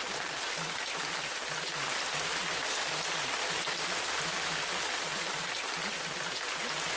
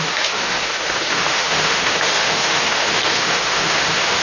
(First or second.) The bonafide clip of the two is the first